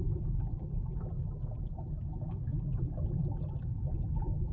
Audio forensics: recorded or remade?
remade